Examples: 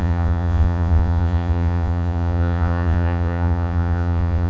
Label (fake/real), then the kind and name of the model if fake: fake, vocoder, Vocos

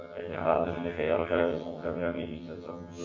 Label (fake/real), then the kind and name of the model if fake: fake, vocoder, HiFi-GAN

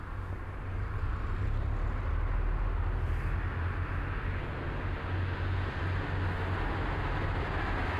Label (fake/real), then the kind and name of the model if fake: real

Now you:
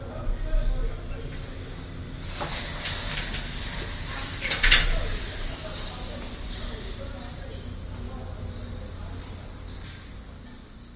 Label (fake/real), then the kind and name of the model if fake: real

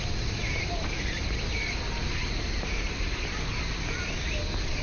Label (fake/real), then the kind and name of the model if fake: real